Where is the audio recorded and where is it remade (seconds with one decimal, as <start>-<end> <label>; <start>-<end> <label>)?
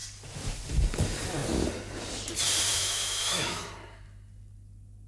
0.0-2.7 recorded; 2.7-3.6 remade; 3.6-5.1 recorded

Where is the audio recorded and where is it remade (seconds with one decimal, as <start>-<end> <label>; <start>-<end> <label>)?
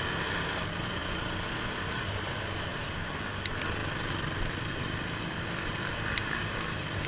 0.0-7.1 recorded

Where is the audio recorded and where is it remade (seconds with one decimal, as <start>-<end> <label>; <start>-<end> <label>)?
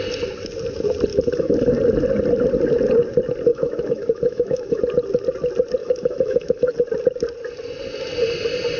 0.0-1.1 recorded; 1.1-1.7 remade; 1.7-3.5 recorded; 3.5-4.8 remade; 4.8-5.8 recorded; 5.8-6.7 remade; 6.7-8.8 recorded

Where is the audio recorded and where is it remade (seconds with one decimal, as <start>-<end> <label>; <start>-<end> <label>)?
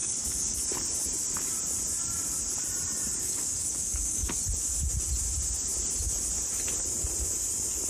0.0-0.6 remade; 0.6-3.2 recorded; 3.2-4.4 remade; 4.4-7.9 recorded